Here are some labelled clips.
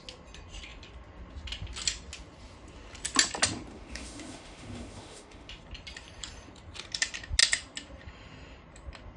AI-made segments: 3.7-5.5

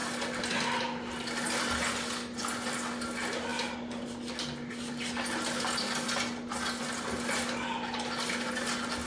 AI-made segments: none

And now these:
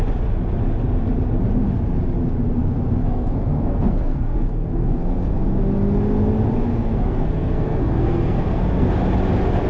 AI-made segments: 3.0-5.6; 6.7-8.9

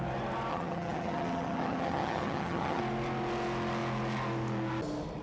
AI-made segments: 0.5-2.8